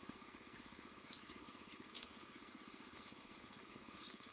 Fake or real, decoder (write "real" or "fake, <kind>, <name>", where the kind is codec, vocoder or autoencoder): fake, codec, SNAC